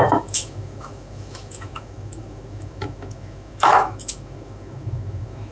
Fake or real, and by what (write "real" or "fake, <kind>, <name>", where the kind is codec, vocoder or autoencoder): fake, autoencoder, DAC-VAE